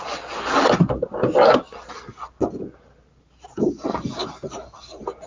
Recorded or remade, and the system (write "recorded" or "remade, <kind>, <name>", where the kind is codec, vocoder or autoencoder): recorded